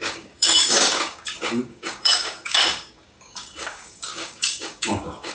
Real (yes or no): no